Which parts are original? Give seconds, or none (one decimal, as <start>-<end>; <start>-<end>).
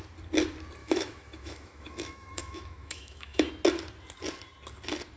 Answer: 0.0-0.8; 3.5-5.2